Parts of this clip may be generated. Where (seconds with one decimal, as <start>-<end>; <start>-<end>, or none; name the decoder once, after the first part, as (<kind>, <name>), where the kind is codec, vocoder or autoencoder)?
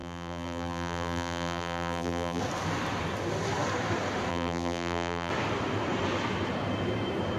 0.0-2.4 (vocoder, BigVGAN v2); 4.3-5.3